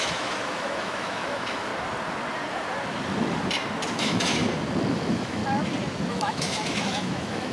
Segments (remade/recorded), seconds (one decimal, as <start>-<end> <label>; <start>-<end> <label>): 0.0-1.7 remade; 1.7-3.9 recorded; 3.9-4.4 remade; 4.4-4.9 recorded; 4.9-5.4 remade; 5.4-6.1 recorded; 6.1-7.5 remade